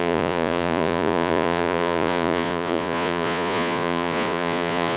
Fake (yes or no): yes